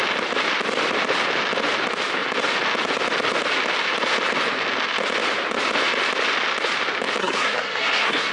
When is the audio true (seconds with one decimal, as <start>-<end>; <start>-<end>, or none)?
0.0-7.2